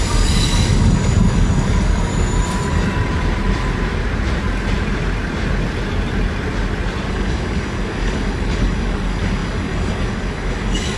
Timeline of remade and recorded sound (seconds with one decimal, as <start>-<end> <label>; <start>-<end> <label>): 0.0-2.1 remade; 2.1-7.1 recorded; 7.1-11.0 remade